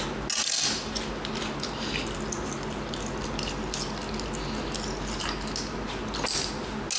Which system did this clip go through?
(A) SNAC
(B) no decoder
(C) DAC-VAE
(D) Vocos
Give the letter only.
B